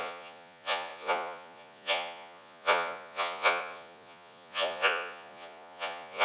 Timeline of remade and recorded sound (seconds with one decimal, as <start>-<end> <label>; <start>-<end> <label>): 0.0-6.2 remade